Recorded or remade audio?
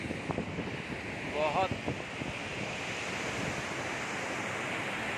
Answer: recorded